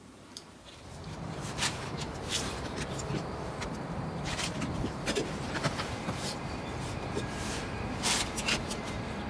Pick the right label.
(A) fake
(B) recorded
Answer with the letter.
A